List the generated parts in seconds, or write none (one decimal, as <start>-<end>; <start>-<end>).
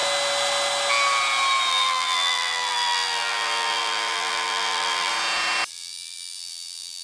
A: 1.7-5.1; 5.7-7.0